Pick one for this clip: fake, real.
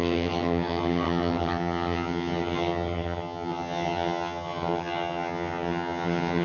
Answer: fake